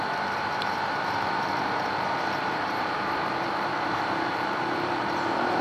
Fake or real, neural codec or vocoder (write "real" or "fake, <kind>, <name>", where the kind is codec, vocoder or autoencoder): fake, vocoder, BigVGAN v2